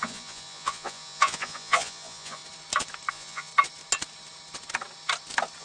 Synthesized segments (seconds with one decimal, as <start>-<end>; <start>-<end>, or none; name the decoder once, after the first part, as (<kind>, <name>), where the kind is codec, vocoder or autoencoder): 0.0-2.4 (vocoder, Vocos); 3.1-3.5